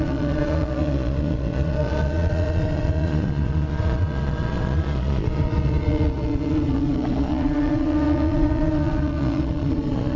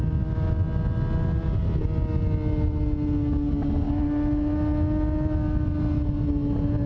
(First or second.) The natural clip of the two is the second